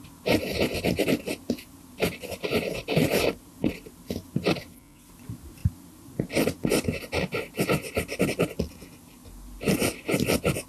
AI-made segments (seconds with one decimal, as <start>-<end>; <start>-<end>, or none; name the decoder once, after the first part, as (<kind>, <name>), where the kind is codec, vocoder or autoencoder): none